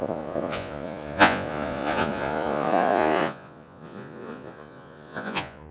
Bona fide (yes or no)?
no